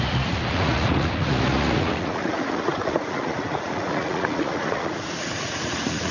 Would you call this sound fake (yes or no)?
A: yes